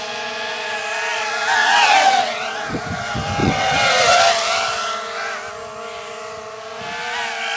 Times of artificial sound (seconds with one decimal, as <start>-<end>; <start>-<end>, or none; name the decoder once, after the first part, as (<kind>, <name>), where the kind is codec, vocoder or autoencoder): 1.6-2.8 (vocoder, WaveNeXt); 3.4-4.2